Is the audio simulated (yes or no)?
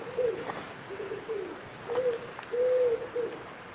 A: no